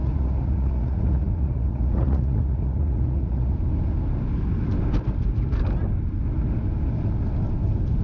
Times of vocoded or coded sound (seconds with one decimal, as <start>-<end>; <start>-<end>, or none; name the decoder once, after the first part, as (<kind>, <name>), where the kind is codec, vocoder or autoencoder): 0.0-3.5 (vocoder, Vocos)